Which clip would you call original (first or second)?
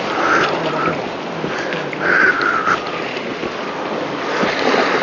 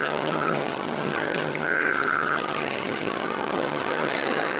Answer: first